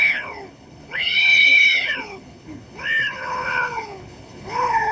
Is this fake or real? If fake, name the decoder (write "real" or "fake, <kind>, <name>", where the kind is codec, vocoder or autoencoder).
fake, codec, HILCodec